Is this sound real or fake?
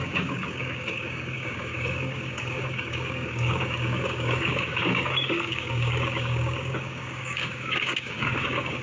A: fake